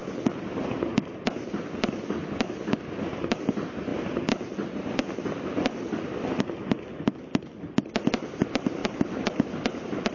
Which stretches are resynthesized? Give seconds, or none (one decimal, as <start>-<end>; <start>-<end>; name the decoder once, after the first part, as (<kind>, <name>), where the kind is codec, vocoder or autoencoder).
none